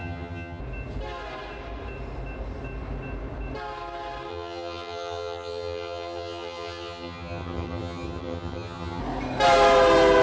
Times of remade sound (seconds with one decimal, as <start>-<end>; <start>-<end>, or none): 0.0-0.6; 4.3-9.0